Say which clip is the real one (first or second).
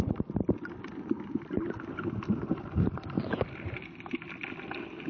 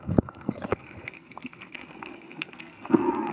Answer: first